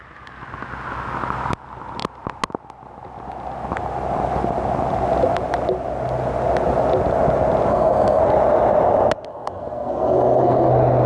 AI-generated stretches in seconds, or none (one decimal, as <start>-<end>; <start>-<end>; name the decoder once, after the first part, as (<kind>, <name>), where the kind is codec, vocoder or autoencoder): 7.7-8.2 (codec, SNAC); 9.3-10.7